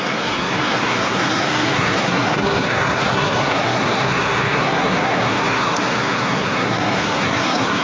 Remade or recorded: remade